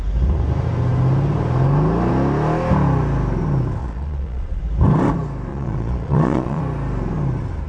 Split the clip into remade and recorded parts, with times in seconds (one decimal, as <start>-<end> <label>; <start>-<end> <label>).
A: 0.0-3.8 recorded; 3.8-4.6 remade; 4.6-5.5 recorded; 5.5-6.6 remade; 6.6-7.7 recorded